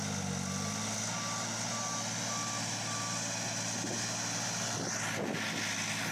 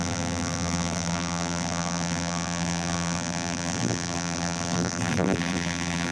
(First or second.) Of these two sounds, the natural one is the first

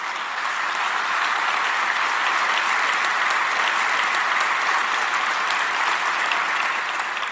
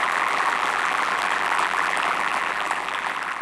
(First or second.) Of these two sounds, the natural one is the first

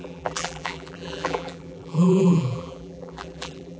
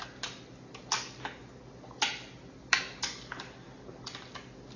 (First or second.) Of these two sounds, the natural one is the second